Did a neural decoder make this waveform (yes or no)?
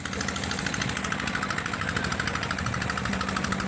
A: no